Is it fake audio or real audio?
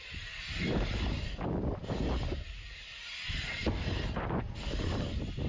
fake